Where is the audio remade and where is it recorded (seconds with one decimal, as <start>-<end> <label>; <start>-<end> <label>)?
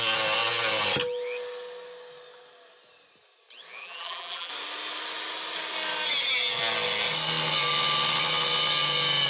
0.0-3.8 recorded; 3.8-4.5 remade; 4.5-9.3 recorded